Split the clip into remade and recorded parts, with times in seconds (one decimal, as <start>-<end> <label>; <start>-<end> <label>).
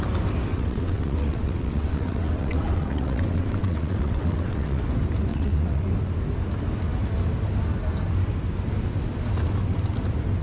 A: 0.0-0.5 recorded; 0.5-4.8 remade; 4.8-5.3 recorded; 5.3-5.9 remade; 5.9-10.4 recorded